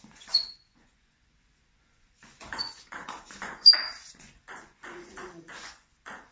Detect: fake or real fake